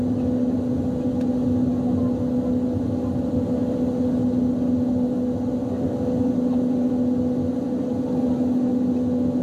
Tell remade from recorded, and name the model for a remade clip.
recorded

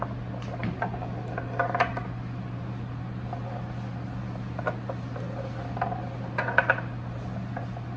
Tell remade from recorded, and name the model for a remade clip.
recorded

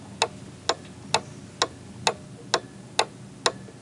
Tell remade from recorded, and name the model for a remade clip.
recorded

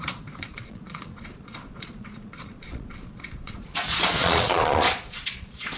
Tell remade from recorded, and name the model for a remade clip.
remade, vocoder, Vocos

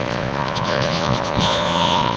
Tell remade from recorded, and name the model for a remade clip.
remade, vocoder, Vocos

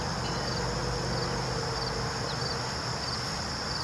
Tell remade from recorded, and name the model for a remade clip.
recorded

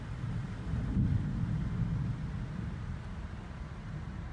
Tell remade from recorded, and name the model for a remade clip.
recorded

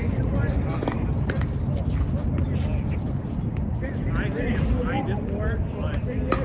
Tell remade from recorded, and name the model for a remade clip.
recorded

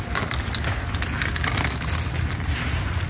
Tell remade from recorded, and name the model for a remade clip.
recorded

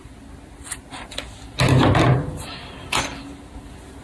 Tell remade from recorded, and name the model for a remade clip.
recorded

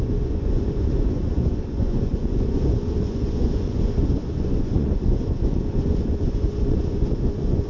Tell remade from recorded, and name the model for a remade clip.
remade, vocoder, Vocos